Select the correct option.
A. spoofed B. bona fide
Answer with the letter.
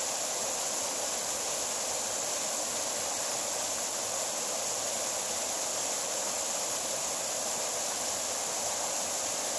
B